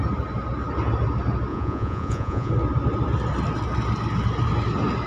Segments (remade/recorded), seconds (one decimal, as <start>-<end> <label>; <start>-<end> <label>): 0.0-1.5 recorded; 1.5-2.5 remade; 2.5-5.1 recorded

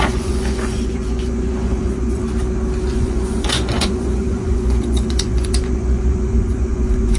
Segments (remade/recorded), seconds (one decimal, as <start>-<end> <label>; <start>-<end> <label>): 0.0-2.2 remade; 2.2-2.9 recorded; 2.9-7.2 remade

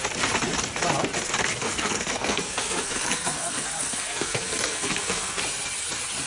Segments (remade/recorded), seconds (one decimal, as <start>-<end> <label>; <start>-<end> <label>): 0.0-1.6 recorded; 1.6-5.4 remade; 5.4-6.3 recorded

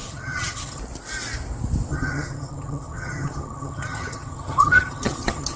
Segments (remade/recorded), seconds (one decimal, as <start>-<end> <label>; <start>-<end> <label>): 0.0-0.8 remade; 0.8-1.9 recorded; 1.9-5.6 remade

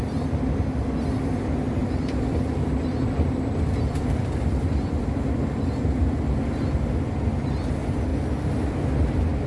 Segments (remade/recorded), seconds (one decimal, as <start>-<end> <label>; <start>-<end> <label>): 0.0-1.8 recorded; 1.8-5.4 remade; 5.4-9.5 recorded

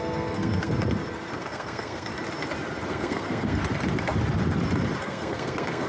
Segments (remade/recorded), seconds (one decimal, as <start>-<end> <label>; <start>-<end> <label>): 0.0-0.7 remade; 0.7-1.4 recorded; 1.4-2.1 remade; 2.1-2.9 recorded; 2.9-3.6 remade; 3.6-5.0 recorded; 5.0-5.9 remade

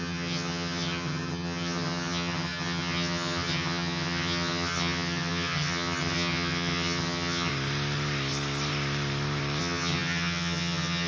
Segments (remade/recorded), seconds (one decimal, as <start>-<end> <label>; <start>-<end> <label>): 0.0-7.5 remade; 7.5-9.6 recorded; 9.6-11.1 remade

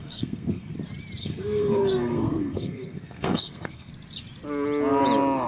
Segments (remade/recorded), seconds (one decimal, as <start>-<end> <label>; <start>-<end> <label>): 0.0-0.7 remade; 0.7-1.2 recorded; 1.2-3.9 remade; 3.9-5.5 recorded